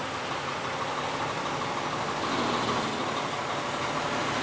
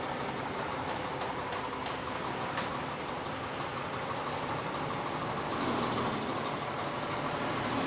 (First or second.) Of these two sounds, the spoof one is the second